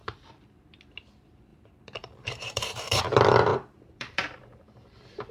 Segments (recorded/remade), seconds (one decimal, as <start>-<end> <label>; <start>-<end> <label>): 0.0-0.8 remade; 0.8-1.5 recorded; 1.5-3.0 remade; 3.0-3.5 recorded; 3.5-5.3 remade